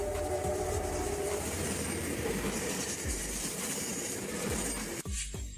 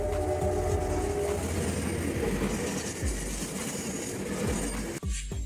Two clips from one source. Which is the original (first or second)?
second